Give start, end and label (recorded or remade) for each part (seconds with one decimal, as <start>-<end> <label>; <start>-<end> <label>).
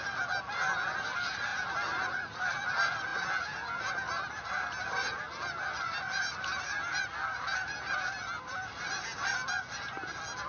0.0-10.5 recorded